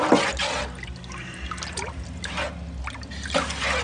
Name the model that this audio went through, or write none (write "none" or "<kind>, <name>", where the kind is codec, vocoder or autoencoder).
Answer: none